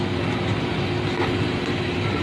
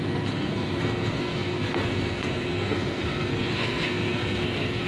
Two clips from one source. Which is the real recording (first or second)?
first